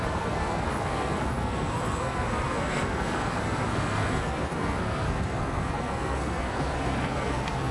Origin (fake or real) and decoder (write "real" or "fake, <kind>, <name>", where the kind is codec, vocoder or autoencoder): fake, codec, SNAC